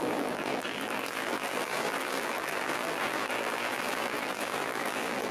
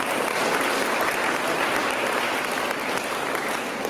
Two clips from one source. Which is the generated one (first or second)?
first